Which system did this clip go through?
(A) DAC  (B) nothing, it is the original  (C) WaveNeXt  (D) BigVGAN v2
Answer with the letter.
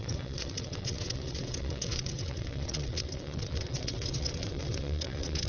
C